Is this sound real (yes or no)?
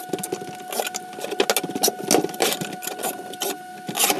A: yes